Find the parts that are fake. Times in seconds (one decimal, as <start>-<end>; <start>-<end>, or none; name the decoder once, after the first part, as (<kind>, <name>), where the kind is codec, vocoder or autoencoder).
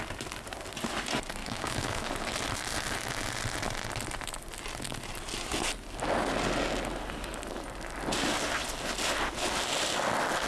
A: 1.4-2.1 (autoencoder, DAC-VAE)